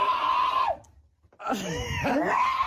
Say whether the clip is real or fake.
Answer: real